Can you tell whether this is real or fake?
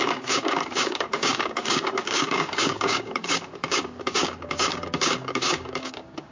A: fake